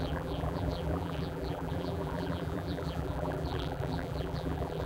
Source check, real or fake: fake